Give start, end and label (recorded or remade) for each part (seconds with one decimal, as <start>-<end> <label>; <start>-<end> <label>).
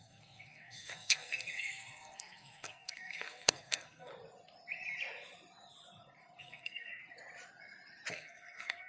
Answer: 0.0-4.1 remade; 4.1-6.4 recorded; 6.4-7.0 remade; 7.0-8.1 recorded; 8.1-8.9 remade